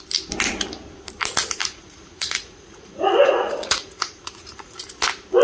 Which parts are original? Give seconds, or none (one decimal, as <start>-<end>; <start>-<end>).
0.0-1.6; 4.8-5.4